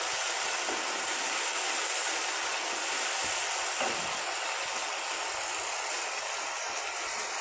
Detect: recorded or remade recorded